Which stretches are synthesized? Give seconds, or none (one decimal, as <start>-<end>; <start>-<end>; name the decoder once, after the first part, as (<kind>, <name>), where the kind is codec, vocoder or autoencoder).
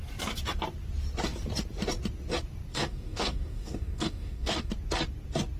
2.7-4.7 (codec, DAC)